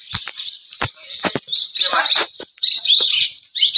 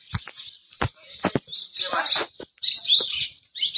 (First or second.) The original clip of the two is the second